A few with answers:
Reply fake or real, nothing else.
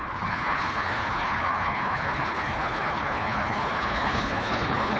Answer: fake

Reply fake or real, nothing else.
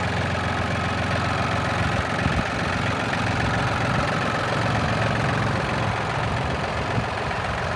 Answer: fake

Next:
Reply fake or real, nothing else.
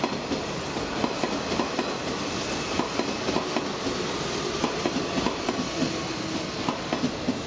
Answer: real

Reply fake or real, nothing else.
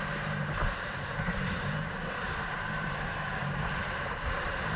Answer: fake